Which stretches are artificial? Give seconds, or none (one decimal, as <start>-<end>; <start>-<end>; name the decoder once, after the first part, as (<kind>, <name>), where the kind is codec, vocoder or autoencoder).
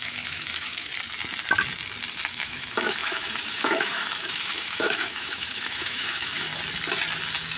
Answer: 0.0-0.9 (autoencoder, DAC-VAE); 2.3-6.5